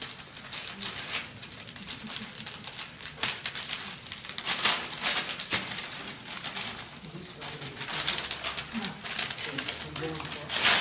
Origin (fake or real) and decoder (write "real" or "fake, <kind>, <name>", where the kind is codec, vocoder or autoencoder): real